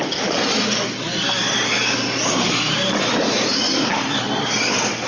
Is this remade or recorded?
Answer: recorded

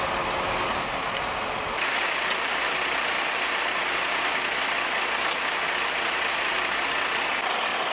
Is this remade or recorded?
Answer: remade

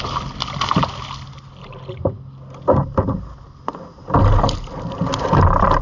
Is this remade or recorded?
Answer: recorded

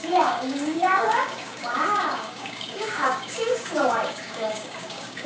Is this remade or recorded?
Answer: remade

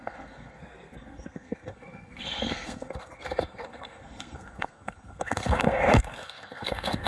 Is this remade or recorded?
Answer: remade